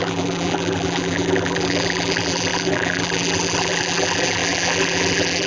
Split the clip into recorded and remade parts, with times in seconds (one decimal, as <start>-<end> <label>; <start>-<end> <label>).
0.0-5.5 remade